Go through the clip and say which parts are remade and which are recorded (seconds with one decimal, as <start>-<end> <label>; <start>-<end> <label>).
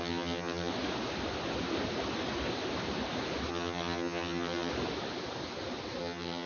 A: 0.0-0.7 remade; 0.7-3.5 recorded; 3.5-4.7 remade; 4.7-6.0 recorded; 6.0-6.5 remade